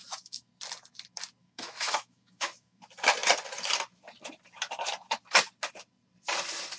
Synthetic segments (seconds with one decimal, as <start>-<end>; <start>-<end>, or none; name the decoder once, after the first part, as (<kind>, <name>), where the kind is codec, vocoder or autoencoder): 0.0-0.5 (autoencoder, DAC-VAE); 1.4-2.8

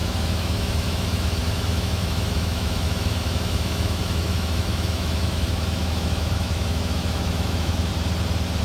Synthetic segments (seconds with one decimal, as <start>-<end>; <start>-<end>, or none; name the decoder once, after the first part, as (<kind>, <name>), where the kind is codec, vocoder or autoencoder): 0.0-7.9 (autoencoder, DAC-VAE)

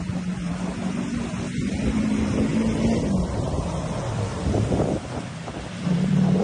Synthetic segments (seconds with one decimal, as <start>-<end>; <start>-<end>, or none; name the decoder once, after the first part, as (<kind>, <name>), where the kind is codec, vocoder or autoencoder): 0.0-0.7 (vocoder, BigVGAN v2); 1.6-2.5; 3.5-6.4

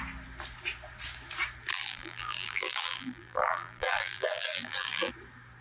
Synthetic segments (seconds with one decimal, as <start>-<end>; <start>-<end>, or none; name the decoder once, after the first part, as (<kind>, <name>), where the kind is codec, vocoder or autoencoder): 1.7-5.1 (vocoder, BigVGAN v2)

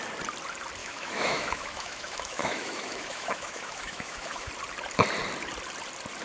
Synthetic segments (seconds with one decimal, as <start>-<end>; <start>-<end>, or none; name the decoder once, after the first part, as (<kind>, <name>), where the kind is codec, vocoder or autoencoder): 0.8-4.5 (autoencoder, DAC-VAE)

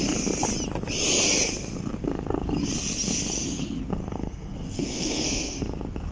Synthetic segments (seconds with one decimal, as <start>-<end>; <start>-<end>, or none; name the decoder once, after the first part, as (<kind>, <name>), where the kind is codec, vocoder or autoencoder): 4.0-5.6 (codec, SNAC)